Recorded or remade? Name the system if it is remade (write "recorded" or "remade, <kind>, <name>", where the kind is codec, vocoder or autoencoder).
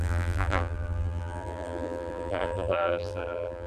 remade, vocoder, BigVGAN v2